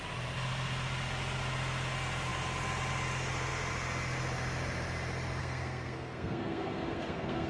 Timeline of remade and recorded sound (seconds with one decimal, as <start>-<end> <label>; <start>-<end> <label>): 0.0-5.4 recorded; 5.4-7.5 remade